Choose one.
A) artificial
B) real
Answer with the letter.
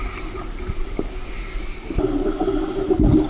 B